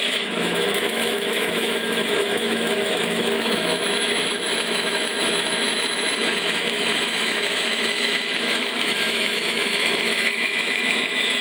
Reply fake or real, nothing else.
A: fake